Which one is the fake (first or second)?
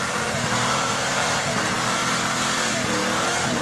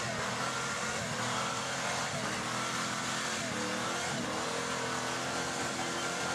first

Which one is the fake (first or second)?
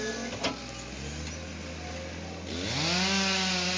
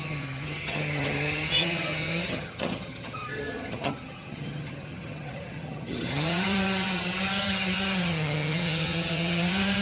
second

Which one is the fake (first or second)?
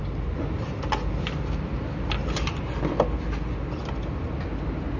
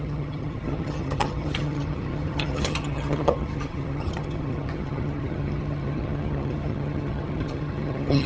second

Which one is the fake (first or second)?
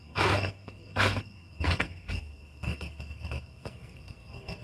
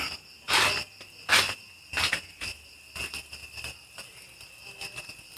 first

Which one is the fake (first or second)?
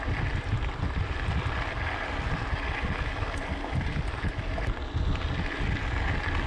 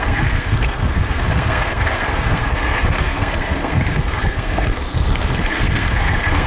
second